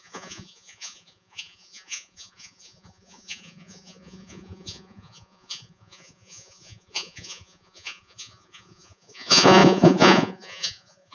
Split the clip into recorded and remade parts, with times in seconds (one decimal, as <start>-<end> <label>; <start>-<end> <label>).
0.0-11.1 remade